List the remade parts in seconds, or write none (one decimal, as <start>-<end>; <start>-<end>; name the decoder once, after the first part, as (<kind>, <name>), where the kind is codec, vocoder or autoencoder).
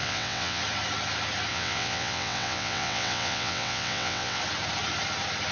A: 0.0-0.6 (vocoder, WaveNeXt); 1.5-4.4